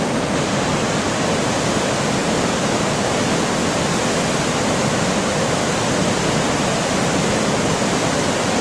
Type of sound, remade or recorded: recorded